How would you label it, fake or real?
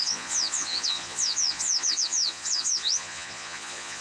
fake